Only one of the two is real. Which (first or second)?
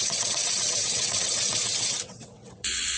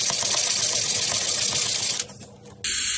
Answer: second